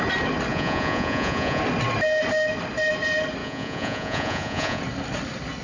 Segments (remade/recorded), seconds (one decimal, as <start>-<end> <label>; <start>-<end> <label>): 0.0-0.5 recorded; 0.5-1.6 remade; 1.6-3.4 recorded; 3.4-4.8 remade; 4.8-5.6 recorded